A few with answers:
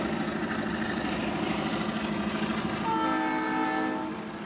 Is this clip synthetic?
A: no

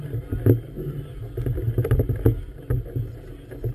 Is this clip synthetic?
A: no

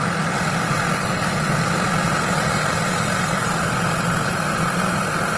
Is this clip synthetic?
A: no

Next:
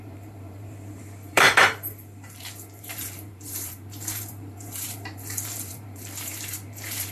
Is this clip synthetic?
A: yes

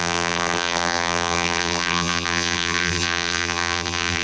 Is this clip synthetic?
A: yes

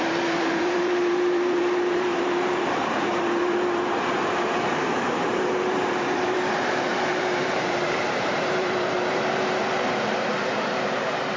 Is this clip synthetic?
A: yes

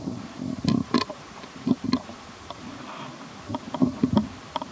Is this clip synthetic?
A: no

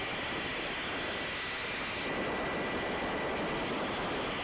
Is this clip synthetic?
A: no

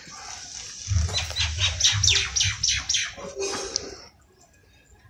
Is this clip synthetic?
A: no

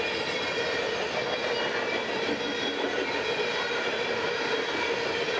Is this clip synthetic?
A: no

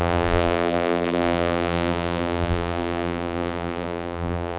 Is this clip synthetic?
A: yes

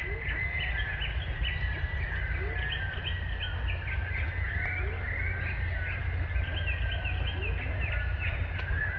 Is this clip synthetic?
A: no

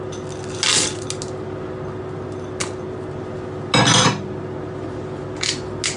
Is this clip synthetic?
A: no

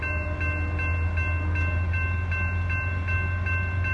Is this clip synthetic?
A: no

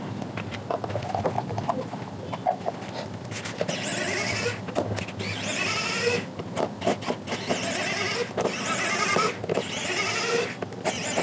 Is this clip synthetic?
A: no